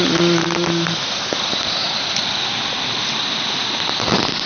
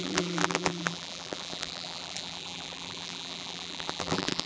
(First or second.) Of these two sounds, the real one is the first